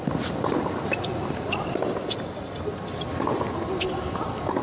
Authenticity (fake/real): real